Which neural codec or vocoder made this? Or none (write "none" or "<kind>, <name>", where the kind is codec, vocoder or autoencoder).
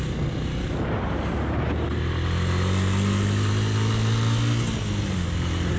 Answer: none